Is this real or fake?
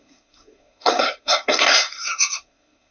fake